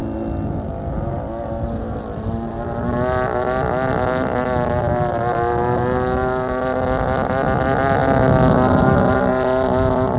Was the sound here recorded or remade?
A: recorded